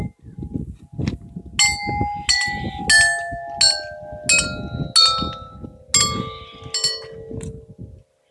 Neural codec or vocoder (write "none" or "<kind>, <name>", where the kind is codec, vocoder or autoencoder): none